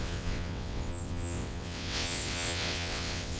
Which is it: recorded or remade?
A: remade